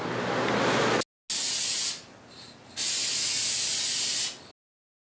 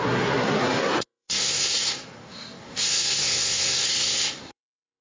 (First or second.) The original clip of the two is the first